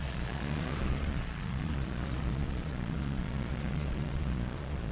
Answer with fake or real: fake